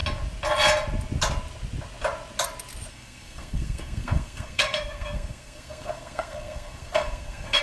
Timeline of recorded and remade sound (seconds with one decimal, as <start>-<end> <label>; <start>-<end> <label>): 0.0-2.9 recorded; 2.9-7.6 remade